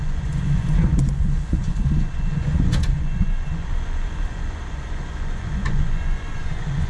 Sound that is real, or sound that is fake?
fake